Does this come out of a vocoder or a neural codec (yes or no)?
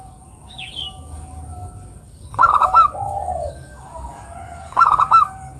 yes